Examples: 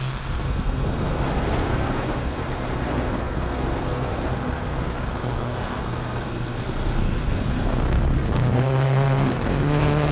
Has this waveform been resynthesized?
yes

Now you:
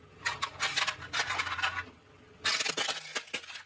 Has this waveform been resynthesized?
no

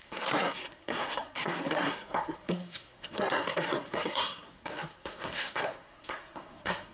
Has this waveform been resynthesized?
yes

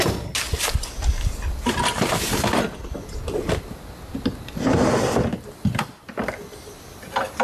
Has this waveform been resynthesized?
no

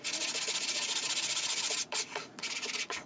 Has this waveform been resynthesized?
yes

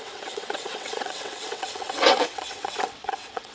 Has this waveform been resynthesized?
yes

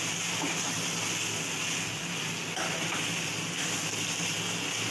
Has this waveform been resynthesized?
no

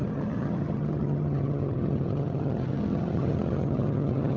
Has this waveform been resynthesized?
yes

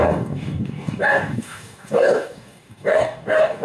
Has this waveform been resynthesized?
yes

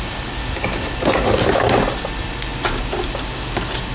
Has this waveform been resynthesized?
no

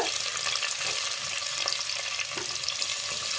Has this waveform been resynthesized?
no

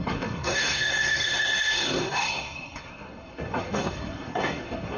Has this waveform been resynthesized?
yes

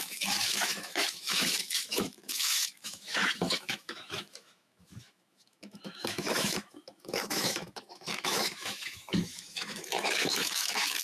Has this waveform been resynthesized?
yes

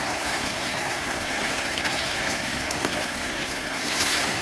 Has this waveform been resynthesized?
yes